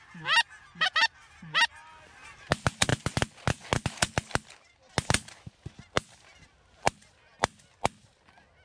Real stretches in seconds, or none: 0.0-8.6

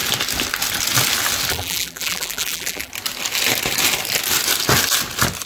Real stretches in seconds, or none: 0.0-1.5; 2.9-5.5

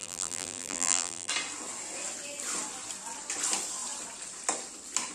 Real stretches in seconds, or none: 1.3-5.1

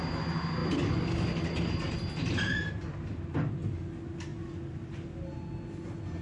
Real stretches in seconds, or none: 0.0-6.2

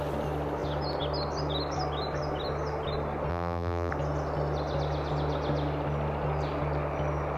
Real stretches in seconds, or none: 0.0-3.3; 3.9-7.4

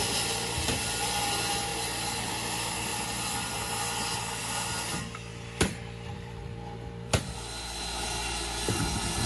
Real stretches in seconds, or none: 0.0-1.7; 2.3-5.3; 8.8-9.3